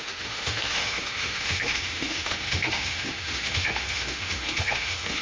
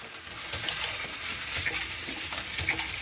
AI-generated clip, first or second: first